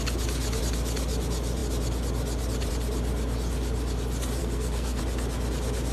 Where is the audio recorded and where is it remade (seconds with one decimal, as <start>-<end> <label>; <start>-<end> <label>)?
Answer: 0.0-4.4 recorded; 4.4-5.0 remade; 5.0-5.9 recorded